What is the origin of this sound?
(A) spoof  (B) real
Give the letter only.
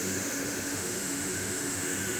A